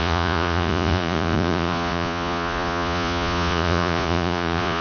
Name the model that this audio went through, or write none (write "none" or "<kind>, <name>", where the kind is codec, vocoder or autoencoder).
vocoder, Vocos